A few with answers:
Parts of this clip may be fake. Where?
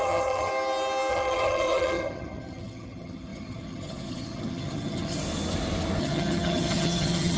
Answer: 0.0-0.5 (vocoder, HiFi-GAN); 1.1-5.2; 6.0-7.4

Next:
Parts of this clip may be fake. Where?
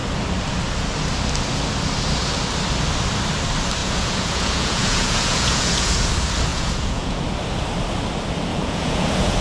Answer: 3.8-6.1 (vocoder, Vocos); 6.5-7.2; 8.5-9.4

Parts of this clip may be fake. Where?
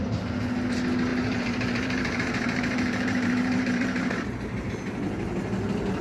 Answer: 1.1-4.7 (vocoder, BigVGAN v2)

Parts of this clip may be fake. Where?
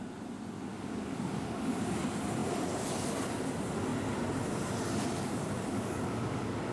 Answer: 0.7-2.0 (codec, DAC); 5.7-6.7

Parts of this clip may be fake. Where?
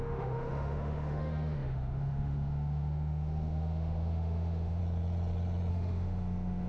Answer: 0.0-4.8 (autoencoder, DAC-VAE); 5.7-6.7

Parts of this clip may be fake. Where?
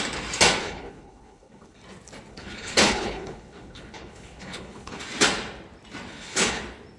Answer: 0.6-1.8 (codec, HILCodec); 2.3-5.0; 6.1-6.6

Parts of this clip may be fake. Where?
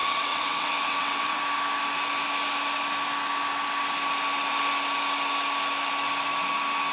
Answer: 0.0-1.4 (vocoder, WaveNeXt)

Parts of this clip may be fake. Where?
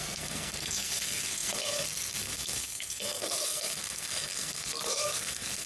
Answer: 0.0-5.7 (codec, SNAC)